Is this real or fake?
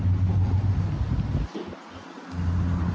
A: real